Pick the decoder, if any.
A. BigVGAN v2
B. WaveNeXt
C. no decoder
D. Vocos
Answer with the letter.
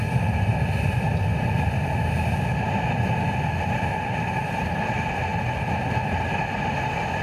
C